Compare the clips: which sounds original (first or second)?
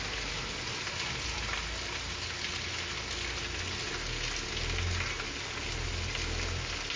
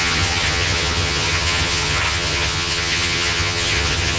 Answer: first